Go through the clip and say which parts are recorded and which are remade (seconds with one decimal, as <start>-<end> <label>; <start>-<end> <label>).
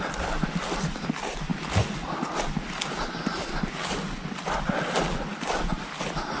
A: 0.0-6.4 recorded